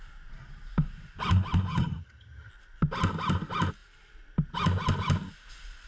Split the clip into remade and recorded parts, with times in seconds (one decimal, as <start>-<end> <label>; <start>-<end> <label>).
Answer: 0.0-1.7 recorded; 1.7-2.5 remade; 2.5-5.9 recorded